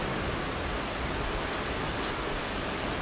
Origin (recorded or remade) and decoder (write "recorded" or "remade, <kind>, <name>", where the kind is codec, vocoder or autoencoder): recorded